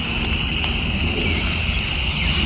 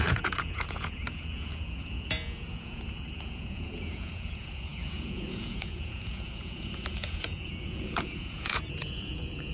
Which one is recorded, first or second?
first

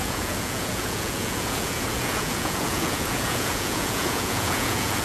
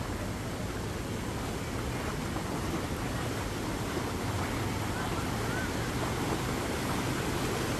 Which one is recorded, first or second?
second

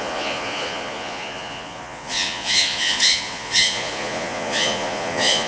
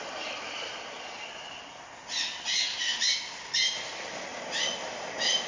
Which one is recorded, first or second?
second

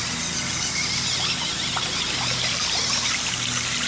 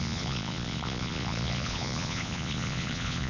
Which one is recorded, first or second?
first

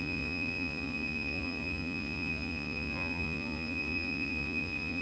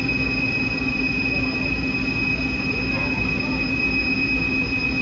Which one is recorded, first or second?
second